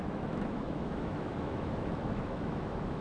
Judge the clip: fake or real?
fake